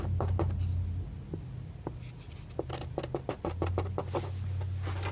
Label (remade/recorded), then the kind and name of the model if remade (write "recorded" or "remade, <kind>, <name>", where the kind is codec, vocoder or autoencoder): recorded